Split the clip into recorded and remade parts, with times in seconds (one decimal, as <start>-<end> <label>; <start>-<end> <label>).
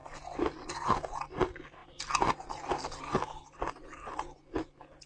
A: 0.0-5.1 recorded